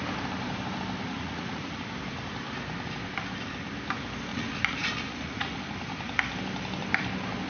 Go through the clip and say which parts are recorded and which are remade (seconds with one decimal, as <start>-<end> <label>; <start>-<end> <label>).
0.0-1.0 recorded; 1.0-1.9 remade; 1.9-4.3 recorded; 4.3-5.6 remade; 5.6-7.5 recorded